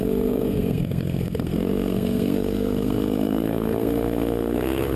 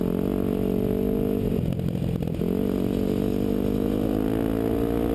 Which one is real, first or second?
second